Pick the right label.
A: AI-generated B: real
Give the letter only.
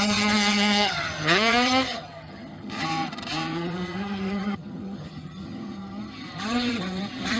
A